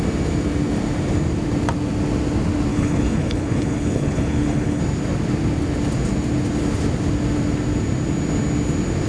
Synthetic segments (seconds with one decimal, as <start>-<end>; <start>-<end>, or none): 2.7-4.8